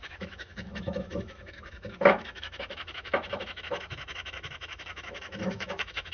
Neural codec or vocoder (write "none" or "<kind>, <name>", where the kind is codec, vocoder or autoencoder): autoencoder, DAC-VAE